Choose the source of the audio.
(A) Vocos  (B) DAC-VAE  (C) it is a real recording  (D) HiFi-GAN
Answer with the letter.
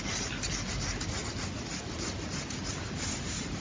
C